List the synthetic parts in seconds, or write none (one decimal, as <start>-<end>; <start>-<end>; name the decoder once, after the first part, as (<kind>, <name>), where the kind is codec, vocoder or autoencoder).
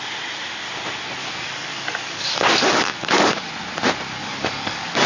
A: 1.2-3.5 (codec, DAC); 4.2-5.1